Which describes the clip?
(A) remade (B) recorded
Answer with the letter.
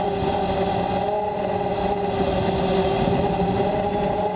B